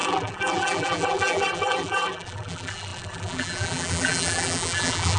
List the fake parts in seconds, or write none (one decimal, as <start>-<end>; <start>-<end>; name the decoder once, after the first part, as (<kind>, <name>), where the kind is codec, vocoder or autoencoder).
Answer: 0.0-5.2 (vocoder, BigVGAN v2)